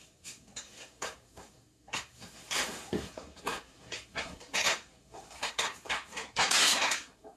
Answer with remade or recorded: remade